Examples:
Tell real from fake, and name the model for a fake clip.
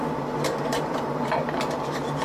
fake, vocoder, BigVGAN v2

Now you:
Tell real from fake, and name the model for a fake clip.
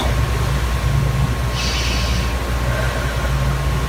real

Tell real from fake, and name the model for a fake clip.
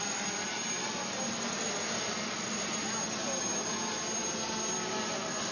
real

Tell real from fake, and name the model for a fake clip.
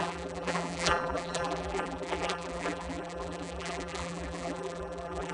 fake, vocoder, BigVGAN v2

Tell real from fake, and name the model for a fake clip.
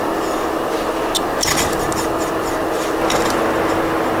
real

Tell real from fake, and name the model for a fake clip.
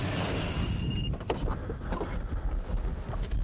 real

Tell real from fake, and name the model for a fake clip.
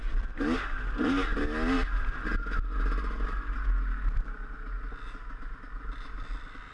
real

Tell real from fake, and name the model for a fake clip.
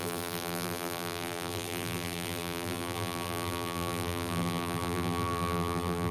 fake, vocoder, BigVGAN v2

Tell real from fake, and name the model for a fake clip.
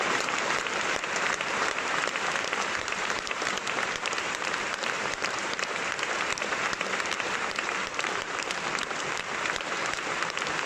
fake, vocoder, BigVGAN v2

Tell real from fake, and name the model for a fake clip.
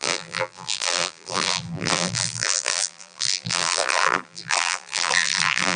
fake, vocoder, BigVGAN v2